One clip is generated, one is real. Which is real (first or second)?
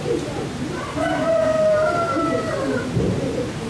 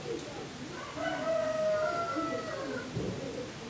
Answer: second